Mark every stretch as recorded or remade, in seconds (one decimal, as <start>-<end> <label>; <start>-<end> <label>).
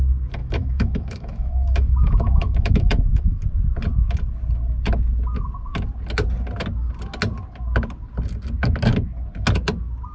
0.0-0.4 recorded; 0.4-3.4 remade; 3.4-10.1 recorded